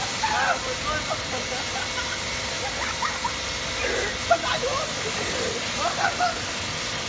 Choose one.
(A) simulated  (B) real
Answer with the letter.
B